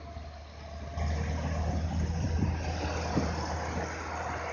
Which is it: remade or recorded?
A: recorded